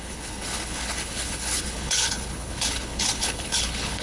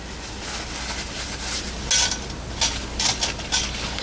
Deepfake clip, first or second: first